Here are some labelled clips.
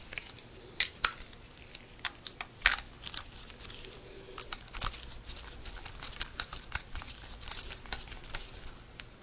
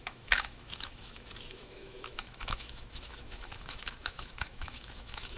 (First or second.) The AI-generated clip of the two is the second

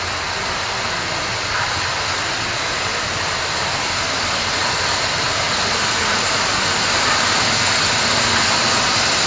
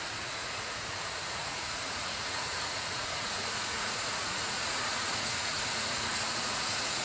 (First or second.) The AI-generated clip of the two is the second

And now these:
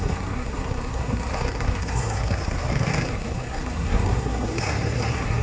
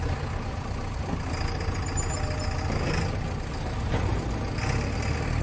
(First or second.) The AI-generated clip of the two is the first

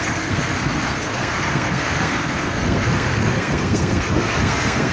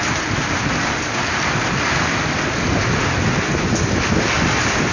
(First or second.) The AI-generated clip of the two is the first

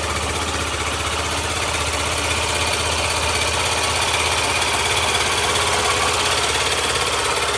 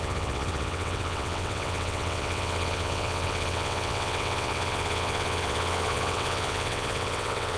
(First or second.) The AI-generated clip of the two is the second